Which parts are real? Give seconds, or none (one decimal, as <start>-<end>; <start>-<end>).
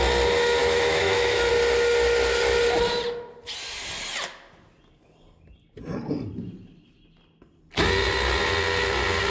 0.0-0.6; 1.5-9.3